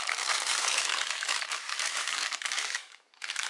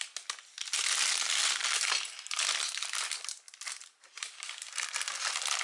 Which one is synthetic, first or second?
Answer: first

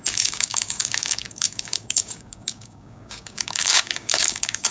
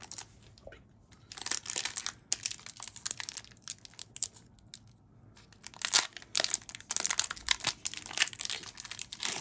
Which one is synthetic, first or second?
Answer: first